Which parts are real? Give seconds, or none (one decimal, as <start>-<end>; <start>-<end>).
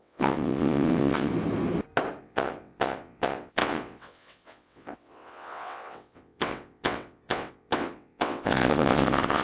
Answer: 1.3-2.2